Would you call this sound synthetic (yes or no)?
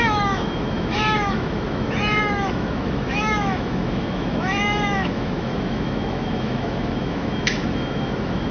yes